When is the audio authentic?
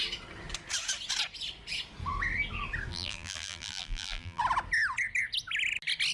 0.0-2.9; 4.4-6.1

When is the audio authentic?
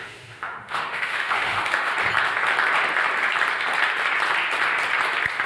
1.9-5.5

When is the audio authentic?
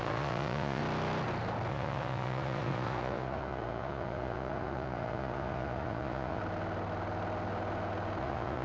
0.8-1.7; 6.4-8.2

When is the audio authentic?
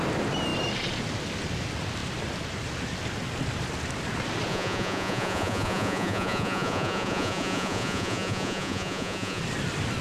0.0-4.5; 9.4-10.0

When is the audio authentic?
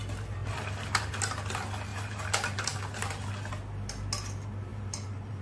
0.0-1.9; 3.3-4.7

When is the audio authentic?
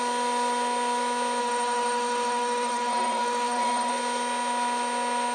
0.0-1.4; 3.9-5.3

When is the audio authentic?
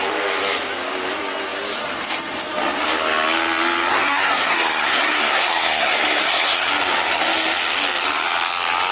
0.0-3.9; 6.7-8.9